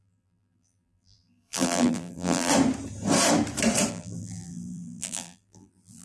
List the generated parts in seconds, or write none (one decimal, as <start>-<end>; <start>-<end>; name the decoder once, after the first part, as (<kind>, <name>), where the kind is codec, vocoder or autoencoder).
0.0-2.5 (vocoder, BigVGAN v2); 3.9-6.0